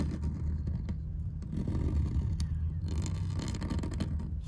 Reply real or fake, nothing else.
real